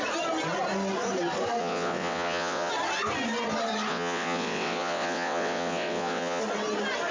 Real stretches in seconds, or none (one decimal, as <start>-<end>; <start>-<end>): 0.0-1.6; 2.7-3.9; 6.4-7.1